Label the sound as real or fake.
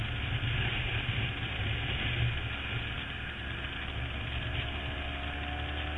real